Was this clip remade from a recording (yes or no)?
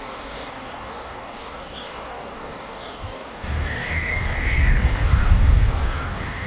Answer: yes